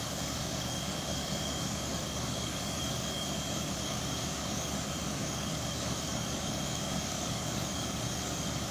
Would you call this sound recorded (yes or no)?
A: no